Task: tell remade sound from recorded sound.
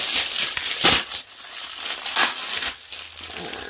recorded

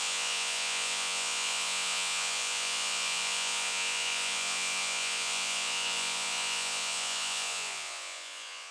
remade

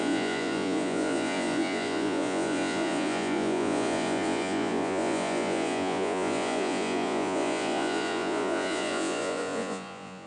remade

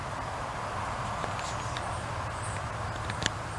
recorded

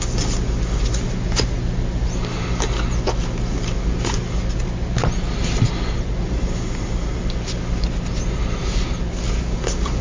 recorded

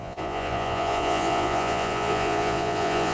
remade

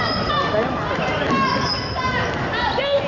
recorded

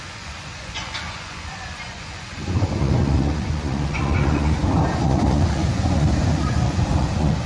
remade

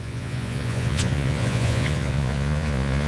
remade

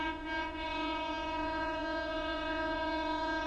remade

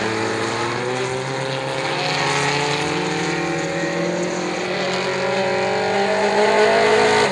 recorded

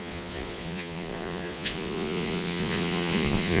remade